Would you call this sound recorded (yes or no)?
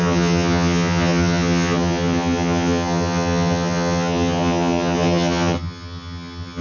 no